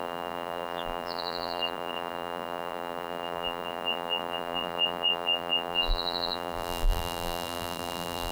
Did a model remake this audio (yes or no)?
yes